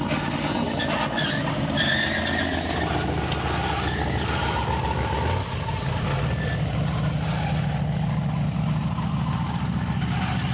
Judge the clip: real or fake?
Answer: real